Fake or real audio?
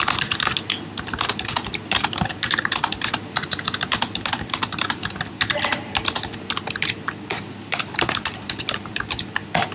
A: fake